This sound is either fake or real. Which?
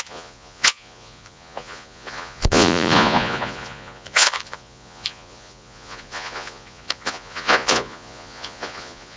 fake